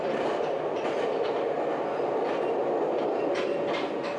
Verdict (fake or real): real